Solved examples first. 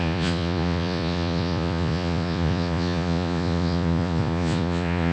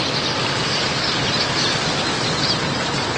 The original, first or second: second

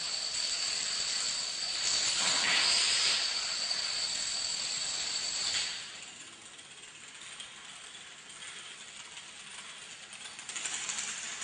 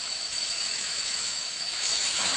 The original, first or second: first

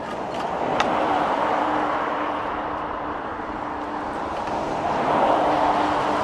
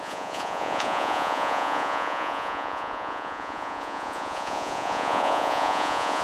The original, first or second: first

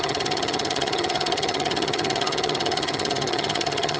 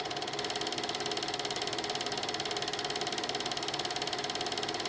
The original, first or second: second